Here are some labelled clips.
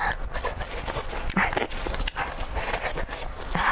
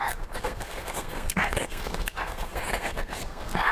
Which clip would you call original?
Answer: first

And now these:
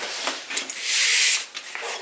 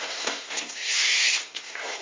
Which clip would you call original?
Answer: first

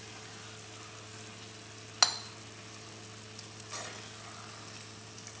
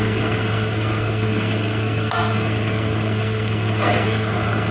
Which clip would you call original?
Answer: first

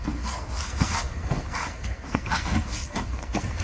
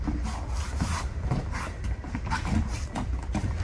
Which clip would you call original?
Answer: second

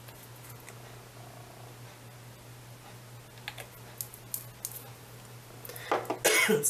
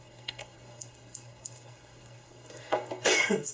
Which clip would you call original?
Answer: first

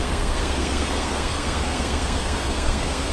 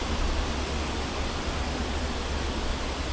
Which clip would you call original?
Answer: second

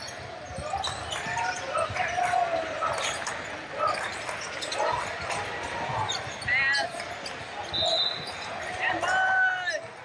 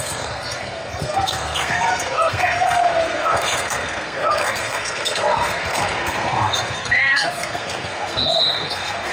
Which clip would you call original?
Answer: first